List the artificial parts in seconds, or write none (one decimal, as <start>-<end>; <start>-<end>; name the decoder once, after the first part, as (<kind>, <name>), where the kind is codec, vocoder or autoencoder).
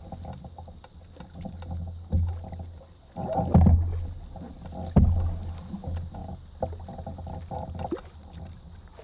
none